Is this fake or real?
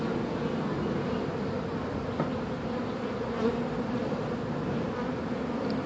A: real